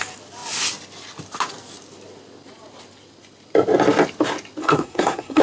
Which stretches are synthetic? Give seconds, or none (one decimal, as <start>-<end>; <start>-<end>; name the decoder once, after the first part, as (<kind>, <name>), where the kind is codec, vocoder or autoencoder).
4.6-5.4 (codec, SNAC)